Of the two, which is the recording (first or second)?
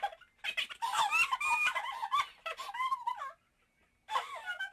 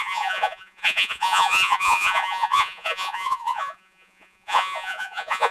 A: first